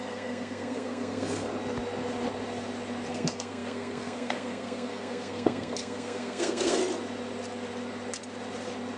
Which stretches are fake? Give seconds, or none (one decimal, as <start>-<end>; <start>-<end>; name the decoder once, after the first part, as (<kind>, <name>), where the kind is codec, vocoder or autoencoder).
0.0-1.5 (codec, SNAC); 3.1-6.8